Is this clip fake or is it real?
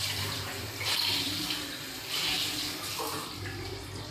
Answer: fake